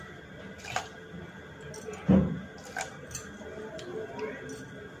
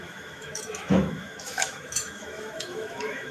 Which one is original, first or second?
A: first